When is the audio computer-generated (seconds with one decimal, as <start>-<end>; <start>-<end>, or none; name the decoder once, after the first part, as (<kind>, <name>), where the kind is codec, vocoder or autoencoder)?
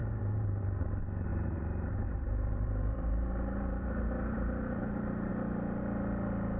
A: 0.0-0.9 (vocoder, BigVGAN v2); 1.3-5.3